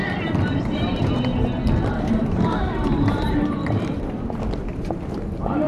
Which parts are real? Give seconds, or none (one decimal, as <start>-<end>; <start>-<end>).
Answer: 1.3-2.2